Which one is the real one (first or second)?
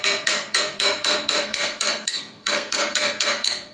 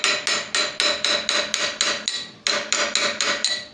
second